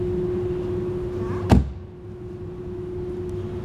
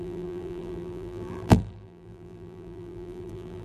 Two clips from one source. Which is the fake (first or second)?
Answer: second